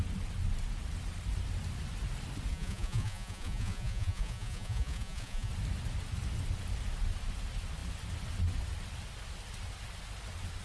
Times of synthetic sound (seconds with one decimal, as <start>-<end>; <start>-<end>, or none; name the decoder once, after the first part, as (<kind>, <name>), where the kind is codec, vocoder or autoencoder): 2.5-5.5 (vocoder, Vocos)